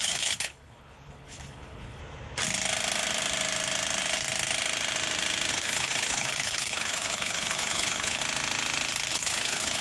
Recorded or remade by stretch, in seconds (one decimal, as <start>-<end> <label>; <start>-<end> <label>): 0.0-2.0 remade; 2.0-5.5 recorded; 5.5-8.2 remade; 8.2-9.1 recorded; 9.1-9.8 remade